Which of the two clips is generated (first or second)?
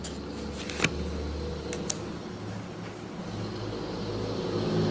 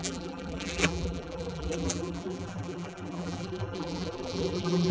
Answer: second